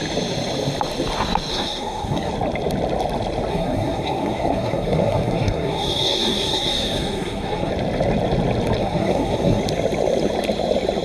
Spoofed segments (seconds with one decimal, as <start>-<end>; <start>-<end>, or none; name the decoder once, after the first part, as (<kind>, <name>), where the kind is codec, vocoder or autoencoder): 1.5-2.3 (codec, SNAC); 3.5-7.7; 8.8-9.6